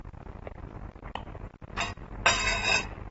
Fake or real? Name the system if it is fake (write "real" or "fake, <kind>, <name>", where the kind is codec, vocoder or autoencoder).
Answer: real